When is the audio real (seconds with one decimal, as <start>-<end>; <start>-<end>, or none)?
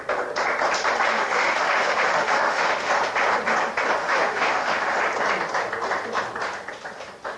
0.0-1.2; 2.9-4.0; 5.0-7.4